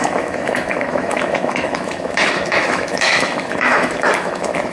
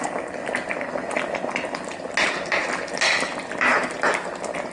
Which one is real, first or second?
second